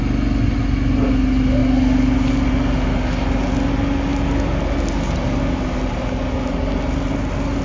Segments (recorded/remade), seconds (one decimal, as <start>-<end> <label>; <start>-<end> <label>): 0.0-7.6 recorded